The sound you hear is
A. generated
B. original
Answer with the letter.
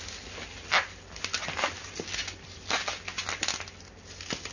B